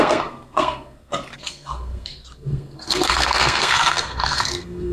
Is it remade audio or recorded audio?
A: remade